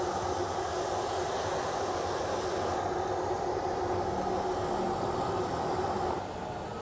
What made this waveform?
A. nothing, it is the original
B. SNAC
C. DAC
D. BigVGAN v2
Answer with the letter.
A